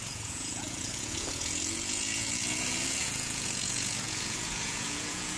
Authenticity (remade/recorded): remade